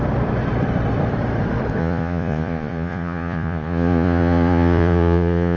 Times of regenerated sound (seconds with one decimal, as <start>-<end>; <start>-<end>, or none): 1.8-5.6